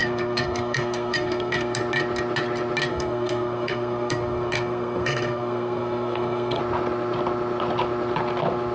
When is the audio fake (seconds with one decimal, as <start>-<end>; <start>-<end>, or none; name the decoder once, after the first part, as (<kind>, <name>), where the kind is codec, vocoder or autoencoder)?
0.0-1.8 (codec, SNAC); 2.9-6.6